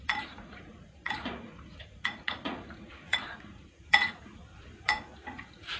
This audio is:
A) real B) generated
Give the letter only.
B